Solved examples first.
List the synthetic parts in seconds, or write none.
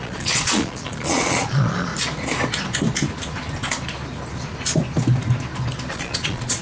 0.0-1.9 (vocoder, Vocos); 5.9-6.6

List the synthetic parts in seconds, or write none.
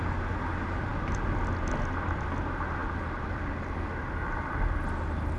none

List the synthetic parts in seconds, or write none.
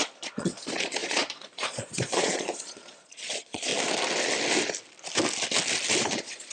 0.0-3.7 (vocoder, Vocos); 6.0-6.5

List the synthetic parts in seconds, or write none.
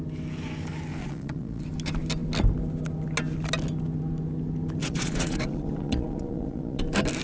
1.0-1.6 (vocoder, Vocos); 4.8-6.8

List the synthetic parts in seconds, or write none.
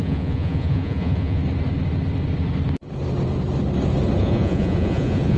0.0-1.4 (vocoder, Vocos); 4.2-5.4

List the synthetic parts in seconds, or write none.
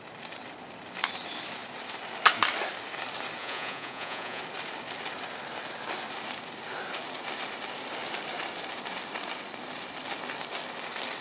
3.4-4.4 (vocoder, Vocos)